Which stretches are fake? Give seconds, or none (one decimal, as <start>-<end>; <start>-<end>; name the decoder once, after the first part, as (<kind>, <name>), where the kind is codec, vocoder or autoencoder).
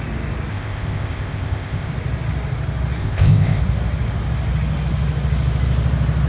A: 0.5-1.9 (codec, ZipCodec); 3.0-3.6